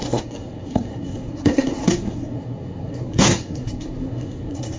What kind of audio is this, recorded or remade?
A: remade